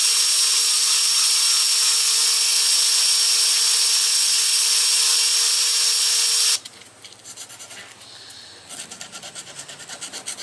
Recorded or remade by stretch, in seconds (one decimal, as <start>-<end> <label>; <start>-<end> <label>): 0.0-10.4 recorded

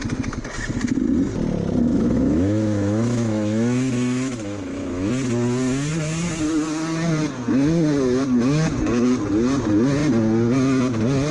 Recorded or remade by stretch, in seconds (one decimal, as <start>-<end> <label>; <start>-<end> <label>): 0.0-1.9 recorded; 1.9-5.1 remade; 5.1-11.3 recorded